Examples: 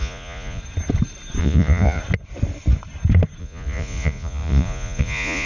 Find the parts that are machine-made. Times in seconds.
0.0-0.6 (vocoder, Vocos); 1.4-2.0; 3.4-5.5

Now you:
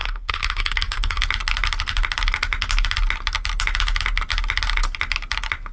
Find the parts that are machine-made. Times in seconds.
0.0-1.2 (codec, SNAC)

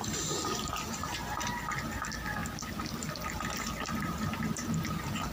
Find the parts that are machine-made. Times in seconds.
none

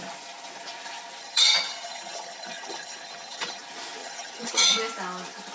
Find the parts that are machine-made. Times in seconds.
1.2-3.6 (vocoder, HiFi-GAN); 4.0-4.8

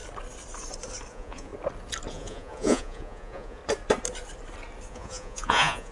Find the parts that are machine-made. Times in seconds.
1.1-1.5 (vocoder, Vocos); 2.1-3.6; 4.9-5.9